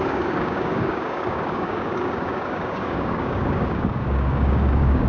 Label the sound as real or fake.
fake